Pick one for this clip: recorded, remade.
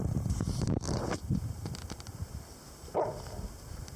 recorded